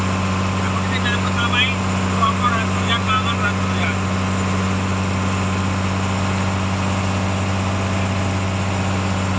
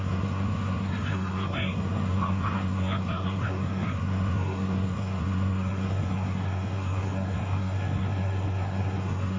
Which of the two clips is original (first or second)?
first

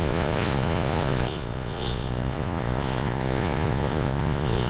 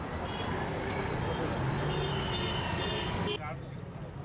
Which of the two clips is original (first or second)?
second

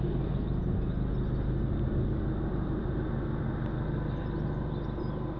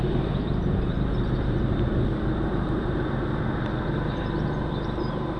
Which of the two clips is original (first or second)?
first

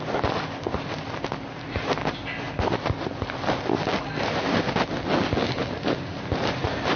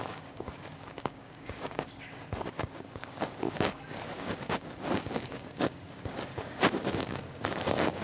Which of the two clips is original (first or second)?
first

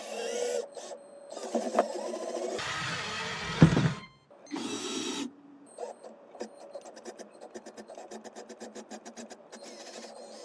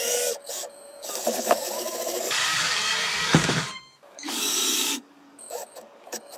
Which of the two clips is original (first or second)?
first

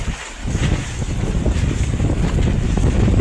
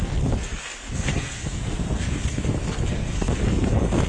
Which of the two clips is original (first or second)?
first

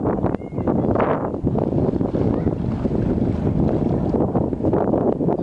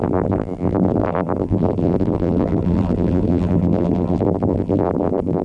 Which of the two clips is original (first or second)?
first